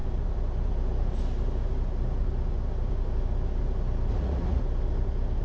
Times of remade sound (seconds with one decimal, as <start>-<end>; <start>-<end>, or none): 4.1-4.6